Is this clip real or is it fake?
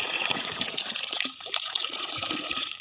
fake